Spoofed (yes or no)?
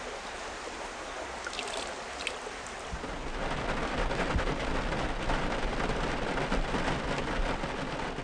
no